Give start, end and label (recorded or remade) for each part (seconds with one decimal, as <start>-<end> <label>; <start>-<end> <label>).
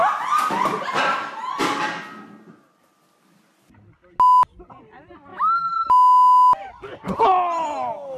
0.0-5.3 recorded; 5.3-5.9 remade; 5.9-8.2 recorded